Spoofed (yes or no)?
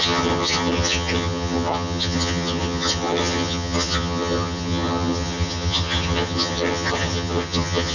yes